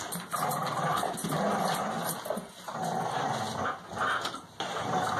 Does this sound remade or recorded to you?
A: recorded